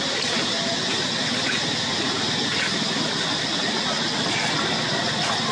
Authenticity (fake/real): real